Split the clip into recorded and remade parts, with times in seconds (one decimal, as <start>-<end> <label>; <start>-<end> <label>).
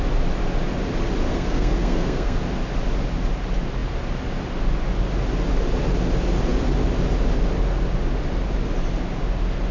0.0-1.3 recorded; 1.3-2.4 remade; 2.4-9.7 recorded